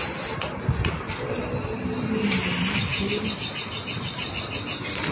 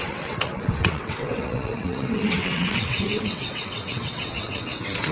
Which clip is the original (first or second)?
first